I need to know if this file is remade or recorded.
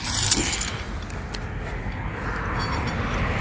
recorded